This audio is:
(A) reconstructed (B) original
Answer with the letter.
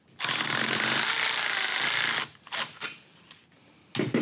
B